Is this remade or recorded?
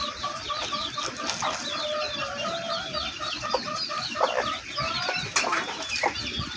recorded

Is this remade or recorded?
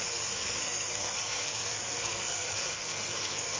remade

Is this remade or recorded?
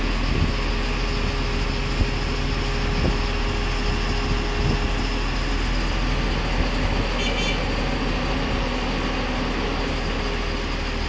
recorded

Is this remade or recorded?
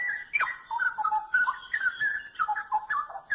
recorded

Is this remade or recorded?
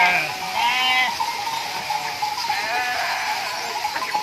recorded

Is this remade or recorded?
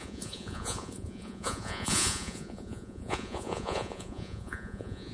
remade